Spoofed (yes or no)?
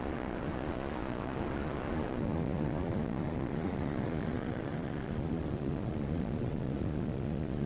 yes